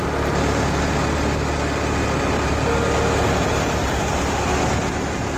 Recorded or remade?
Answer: recorded